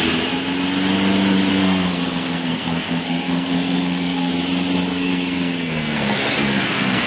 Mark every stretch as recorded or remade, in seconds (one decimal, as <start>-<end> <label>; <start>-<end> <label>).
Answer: 0.0-1.5 recorded; 1.5-4.3 remade; 4.3-4.9 recorded; 4.9-7.1 remade